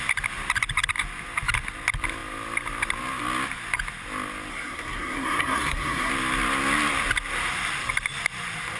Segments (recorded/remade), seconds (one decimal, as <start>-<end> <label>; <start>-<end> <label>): 0.0-4.5 recorded; 4.5-6.1 remade; 6.1-8.8 recorded

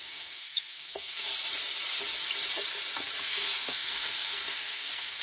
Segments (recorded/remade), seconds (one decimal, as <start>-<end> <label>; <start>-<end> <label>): 0.0-1.3 remade; 1.3-3.2 recorded; 3.2-5.2 remade